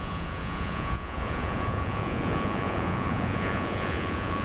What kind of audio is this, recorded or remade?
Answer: remade